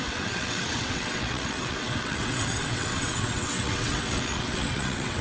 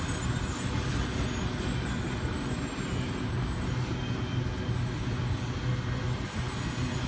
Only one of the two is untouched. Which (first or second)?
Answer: second